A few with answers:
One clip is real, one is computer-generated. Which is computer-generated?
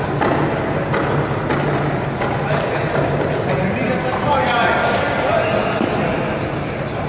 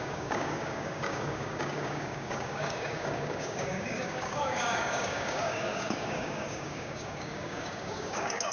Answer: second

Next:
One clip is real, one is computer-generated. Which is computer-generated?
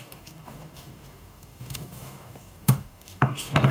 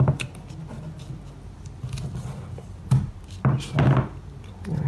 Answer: first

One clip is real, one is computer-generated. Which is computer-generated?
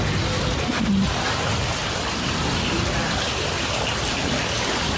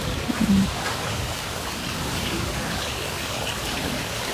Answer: second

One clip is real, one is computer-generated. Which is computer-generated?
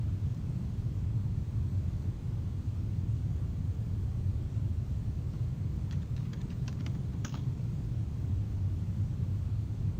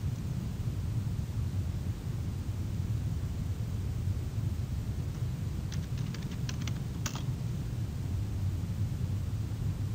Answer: first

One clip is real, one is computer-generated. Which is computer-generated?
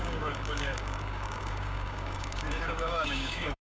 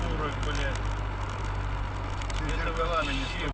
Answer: first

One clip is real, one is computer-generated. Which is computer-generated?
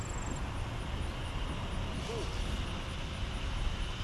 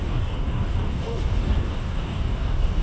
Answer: second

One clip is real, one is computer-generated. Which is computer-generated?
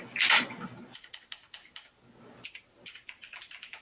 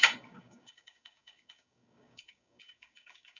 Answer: second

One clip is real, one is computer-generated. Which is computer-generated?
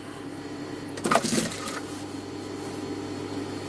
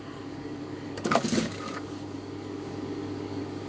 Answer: second